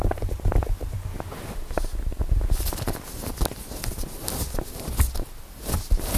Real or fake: real